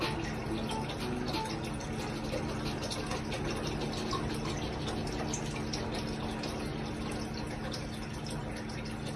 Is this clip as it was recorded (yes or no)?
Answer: yes